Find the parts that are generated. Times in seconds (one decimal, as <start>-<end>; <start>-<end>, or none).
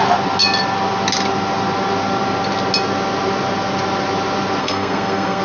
4.6-5.4